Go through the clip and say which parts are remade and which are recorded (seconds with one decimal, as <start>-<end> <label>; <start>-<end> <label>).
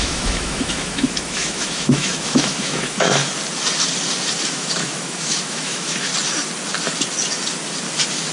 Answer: 0.0-3.2 remade; 3.2-4.5 recorded; 4.5-6.1 remade; 6.1-8.3 recorded